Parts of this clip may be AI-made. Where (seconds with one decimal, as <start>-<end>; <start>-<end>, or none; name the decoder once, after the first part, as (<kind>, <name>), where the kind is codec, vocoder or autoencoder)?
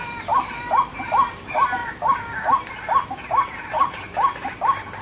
0.0-0.8 (vocoder, BigVGAN v2)